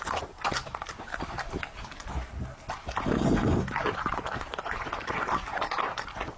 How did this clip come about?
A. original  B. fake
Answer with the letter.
A